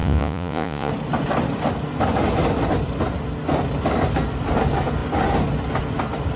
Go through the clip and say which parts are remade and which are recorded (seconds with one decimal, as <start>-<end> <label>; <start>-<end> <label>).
0.0-0.9 remade; 0.9-6.4 recorded